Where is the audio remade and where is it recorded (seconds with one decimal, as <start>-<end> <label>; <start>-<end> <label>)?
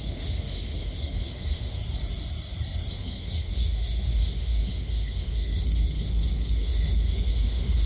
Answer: 0.0-1.8 remade; 1.8-2.9 recorded; 2.9-7.9 remade